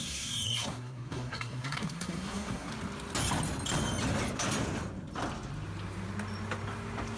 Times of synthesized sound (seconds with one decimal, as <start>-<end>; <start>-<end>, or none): 0.0-2.7